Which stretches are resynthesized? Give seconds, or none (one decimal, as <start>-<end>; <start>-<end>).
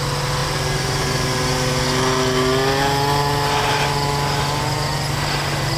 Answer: 0.4-1.5